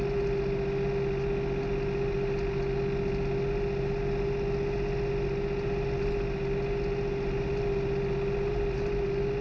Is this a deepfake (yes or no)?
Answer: no